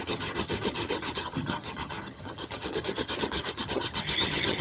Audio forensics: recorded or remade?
remade